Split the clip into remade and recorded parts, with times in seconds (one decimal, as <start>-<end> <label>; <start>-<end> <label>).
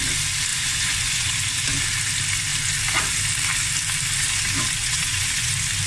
0.0-0.5 recorded; 0.5-1.3 remade; 1.3-4.8 recorded; 4.8-5.5 remade; 5.5-5.9 recorded